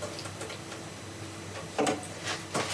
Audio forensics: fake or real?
real